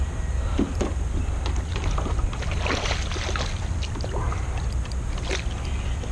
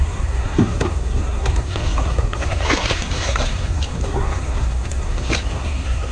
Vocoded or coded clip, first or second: second